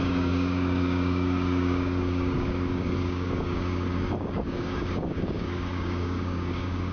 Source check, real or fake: fake